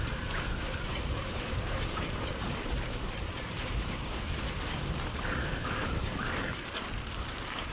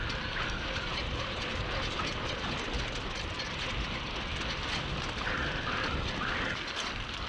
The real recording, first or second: second